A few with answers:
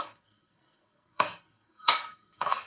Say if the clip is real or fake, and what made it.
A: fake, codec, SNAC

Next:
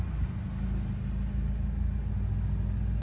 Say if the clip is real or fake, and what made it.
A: real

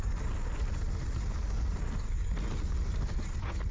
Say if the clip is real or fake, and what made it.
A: real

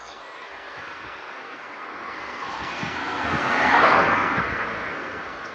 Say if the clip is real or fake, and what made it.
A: fake, codec, SNAC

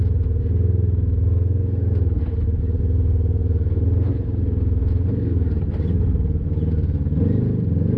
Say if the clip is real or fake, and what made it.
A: real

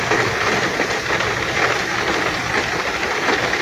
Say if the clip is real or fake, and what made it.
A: real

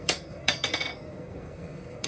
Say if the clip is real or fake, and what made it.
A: fake, codec, SNAC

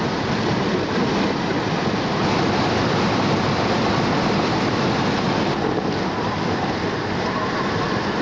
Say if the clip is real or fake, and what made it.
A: real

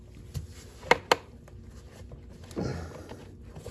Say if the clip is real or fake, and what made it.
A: real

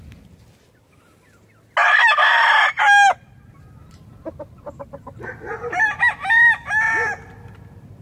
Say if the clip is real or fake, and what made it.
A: real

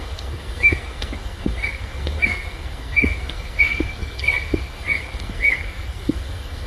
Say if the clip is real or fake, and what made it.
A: fake, codec, SNAC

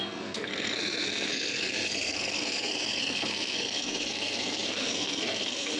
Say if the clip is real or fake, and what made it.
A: fake, codec, SNAC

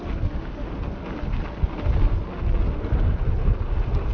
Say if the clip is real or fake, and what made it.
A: real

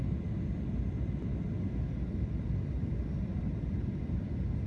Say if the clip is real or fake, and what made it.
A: real